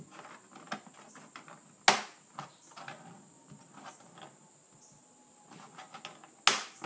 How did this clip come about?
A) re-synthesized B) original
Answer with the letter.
B